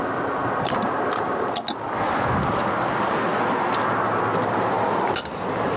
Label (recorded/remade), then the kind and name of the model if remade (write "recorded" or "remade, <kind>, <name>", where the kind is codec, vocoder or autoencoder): recorded